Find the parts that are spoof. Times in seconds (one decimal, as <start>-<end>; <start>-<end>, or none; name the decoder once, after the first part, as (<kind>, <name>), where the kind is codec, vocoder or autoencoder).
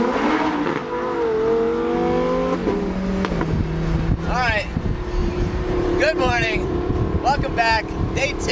5.2-6.9 (vocoder, BigVGAN v2)